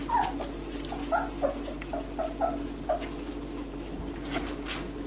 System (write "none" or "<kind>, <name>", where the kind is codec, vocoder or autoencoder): none